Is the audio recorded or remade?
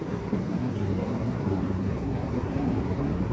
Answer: remade